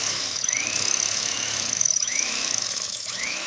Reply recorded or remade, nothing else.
remade